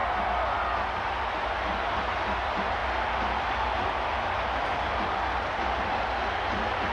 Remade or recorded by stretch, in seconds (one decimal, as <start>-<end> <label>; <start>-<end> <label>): 0.0-1.0 recorded; 1.0-2.8 remade; 2.8-3.4 recorded; 3.4-6.9 remade